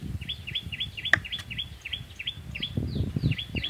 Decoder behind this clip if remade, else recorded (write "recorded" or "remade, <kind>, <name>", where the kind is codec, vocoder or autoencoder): recorded